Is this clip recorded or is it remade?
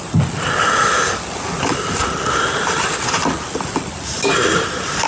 recorded